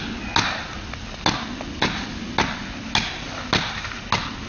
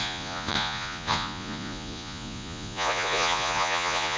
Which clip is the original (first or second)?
first